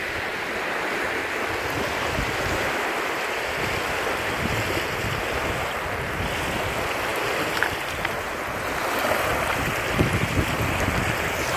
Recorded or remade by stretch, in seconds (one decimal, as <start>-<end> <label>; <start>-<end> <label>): 0.0-7.1 recorded; 7.1-9.5 remade; 9.5-11.6 recorded